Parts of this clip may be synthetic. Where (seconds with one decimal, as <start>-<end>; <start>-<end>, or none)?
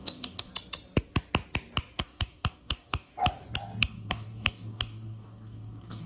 0.0-0.5; 2.0-3.1; 3.8-6.1